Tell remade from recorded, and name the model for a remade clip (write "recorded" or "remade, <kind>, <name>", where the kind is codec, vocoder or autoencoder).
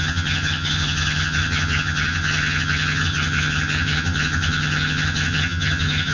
remade, vocoder, HiFi-GAN